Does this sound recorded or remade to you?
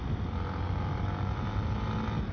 recorded